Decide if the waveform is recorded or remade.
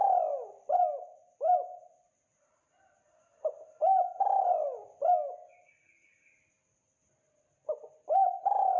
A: recorded